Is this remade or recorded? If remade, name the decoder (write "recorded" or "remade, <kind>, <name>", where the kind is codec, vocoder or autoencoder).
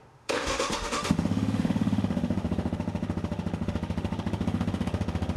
remade, autoencoder, DAC-VAE